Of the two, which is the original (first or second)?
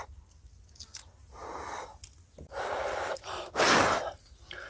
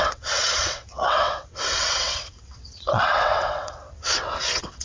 first